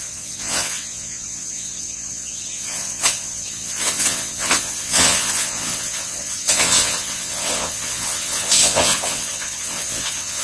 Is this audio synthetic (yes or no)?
yes